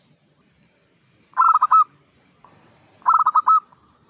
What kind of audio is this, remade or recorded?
remade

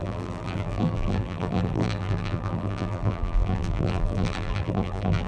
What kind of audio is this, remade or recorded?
remade